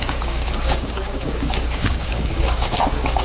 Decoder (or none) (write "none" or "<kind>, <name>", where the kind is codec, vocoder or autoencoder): codec, DAC